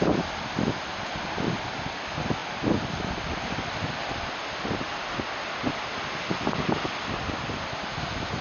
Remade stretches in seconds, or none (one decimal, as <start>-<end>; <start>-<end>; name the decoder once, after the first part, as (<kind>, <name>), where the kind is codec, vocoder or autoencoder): none